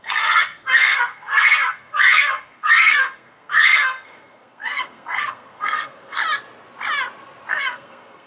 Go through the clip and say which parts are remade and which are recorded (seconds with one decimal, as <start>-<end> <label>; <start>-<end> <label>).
0.0-6.2 remade; 6.2-7.5 recorded; 7.5-8.3 remade